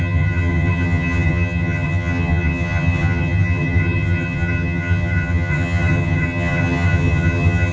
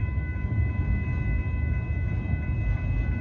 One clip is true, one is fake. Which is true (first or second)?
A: second